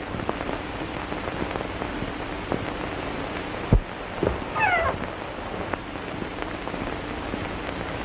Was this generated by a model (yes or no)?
no